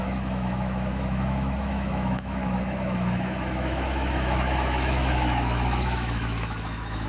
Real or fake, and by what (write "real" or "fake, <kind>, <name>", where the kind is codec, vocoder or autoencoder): fake, autoencoder, DAC-VAE